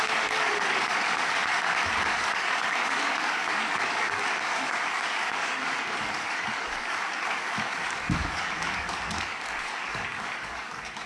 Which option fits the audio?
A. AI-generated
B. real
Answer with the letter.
A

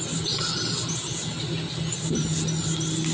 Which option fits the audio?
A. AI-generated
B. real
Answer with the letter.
B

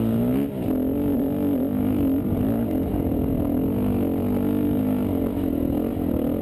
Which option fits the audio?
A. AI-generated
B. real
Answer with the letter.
B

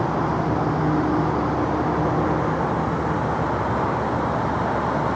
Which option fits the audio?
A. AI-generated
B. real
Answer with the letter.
B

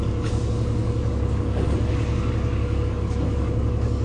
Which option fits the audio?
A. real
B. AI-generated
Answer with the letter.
B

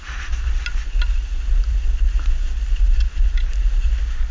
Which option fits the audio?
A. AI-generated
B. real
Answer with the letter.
B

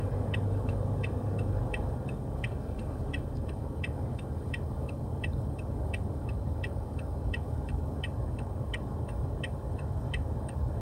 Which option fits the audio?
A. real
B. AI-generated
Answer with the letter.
B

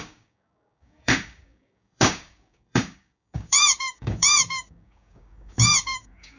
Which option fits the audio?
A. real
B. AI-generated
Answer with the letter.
B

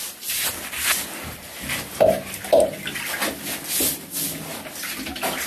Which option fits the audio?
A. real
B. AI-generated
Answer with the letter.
A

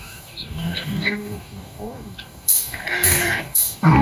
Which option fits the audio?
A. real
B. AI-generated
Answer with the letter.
B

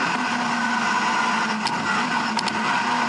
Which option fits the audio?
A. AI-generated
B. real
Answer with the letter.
B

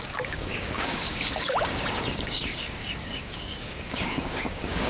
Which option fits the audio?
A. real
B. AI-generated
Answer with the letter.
B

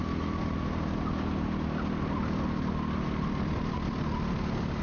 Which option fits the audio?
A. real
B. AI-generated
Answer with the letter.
A